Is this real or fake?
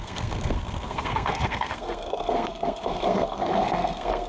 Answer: fake